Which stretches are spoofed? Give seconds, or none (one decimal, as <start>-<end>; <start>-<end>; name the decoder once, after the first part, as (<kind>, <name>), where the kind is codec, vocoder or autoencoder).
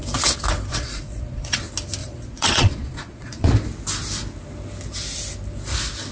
0.7-1.6 (vocoder, Vocos); 2.0-3.5